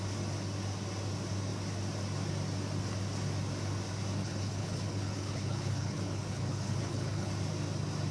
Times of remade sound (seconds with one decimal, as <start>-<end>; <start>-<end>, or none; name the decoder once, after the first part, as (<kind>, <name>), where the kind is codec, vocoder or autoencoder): 4.2-7.3 (codec, HILCodec)